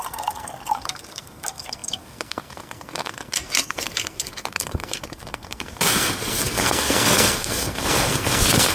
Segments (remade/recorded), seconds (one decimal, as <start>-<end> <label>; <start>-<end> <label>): 0.0-8.7 remade